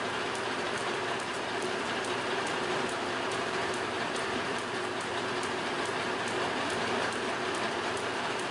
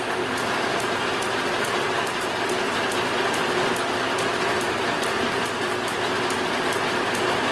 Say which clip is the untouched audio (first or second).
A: second